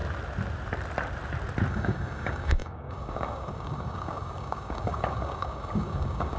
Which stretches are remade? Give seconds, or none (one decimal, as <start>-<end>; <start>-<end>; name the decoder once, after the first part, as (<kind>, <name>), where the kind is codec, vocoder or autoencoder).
1.7-6.4 (codec, DAC)